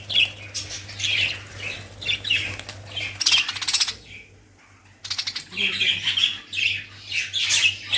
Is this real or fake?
real